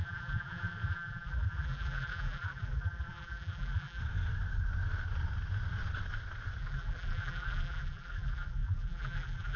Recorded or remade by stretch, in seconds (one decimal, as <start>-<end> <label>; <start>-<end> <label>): 0.0-4.0 remade; 4.0-6.6 recorded; 6.6-9.6 remade

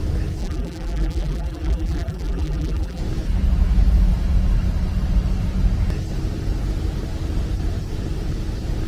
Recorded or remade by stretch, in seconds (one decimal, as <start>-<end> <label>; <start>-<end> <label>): 0.0-0.4 recorded; 0.4-3.0 remade; 3.0-8.9 recorded

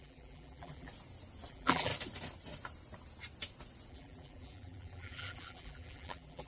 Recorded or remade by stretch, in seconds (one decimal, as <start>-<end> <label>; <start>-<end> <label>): 0.0-0.9 remade; 0.9-1.5 recorded; 1.5-1.9 remade; 1.9-3.9 recorded; 3.9-6.5 remade

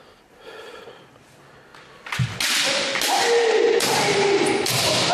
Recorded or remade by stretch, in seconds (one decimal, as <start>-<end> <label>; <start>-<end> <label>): 0.0-5.1 recorded

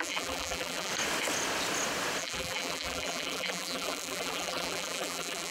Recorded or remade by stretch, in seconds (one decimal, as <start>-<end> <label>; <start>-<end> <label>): 0.0-0.9 remade; 0.9-2.2 recorded; 2.2-5.5 remade

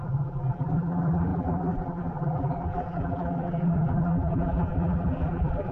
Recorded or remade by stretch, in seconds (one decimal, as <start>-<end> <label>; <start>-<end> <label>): 0.0-5.7 remade

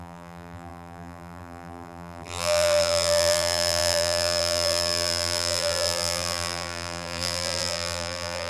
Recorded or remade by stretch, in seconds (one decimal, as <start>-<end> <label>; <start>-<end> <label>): 0.0-8.5 remade

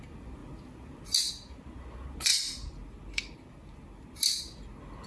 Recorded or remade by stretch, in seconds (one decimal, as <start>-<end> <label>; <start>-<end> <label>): 0.0-5.1 recorded